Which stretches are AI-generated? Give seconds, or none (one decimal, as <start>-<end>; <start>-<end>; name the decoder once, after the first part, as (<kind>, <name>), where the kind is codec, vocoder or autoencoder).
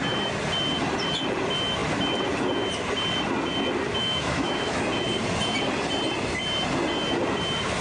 4.0-4.8 (autoencoder, DAC-VAE)